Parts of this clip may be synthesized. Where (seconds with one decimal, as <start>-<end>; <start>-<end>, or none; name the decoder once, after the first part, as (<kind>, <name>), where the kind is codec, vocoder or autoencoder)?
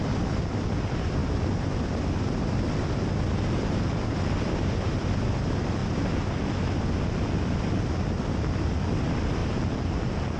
0.0-5.8 (vocoder, BigVGAN v2); 7.4-9.4; 9.9-10.4